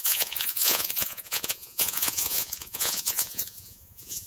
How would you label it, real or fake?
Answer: fake